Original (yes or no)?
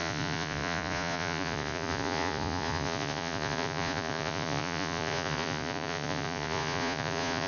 no